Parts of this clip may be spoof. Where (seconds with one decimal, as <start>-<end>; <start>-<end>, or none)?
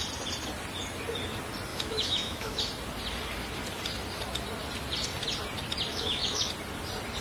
1.7-2.6; 5.9-6.5